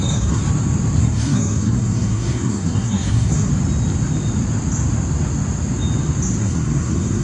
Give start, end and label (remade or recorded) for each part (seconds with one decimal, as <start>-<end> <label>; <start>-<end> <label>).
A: 0.0-0.4 remade; 0.4-1.0 recorded; 1.0-3.5 remade; 3.5-6.4 recorded; 6.4-7.2 remade